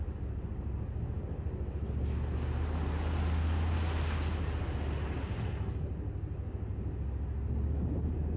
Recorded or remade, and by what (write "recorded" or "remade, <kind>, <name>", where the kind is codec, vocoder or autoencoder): recorded